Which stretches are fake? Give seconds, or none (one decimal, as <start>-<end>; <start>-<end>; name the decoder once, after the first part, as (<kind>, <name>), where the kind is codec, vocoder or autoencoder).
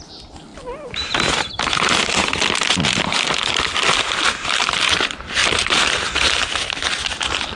0.5-1.1 (vocoder, BigVGAN v2); 5.4-6.3